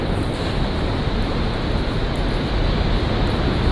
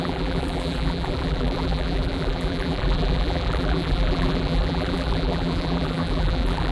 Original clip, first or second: first